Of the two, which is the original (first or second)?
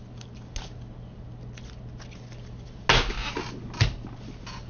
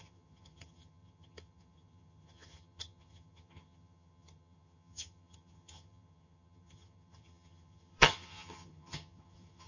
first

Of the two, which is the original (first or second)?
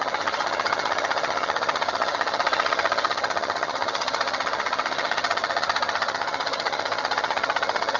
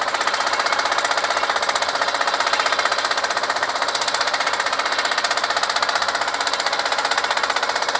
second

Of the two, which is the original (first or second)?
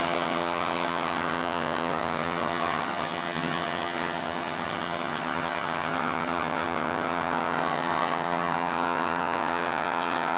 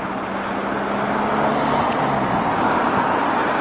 second